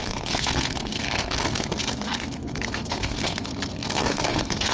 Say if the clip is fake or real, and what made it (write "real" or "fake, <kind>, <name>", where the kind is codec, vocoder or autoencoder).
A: fake, codec, SNAC